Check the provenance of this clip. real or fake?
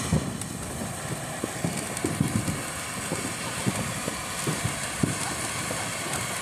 real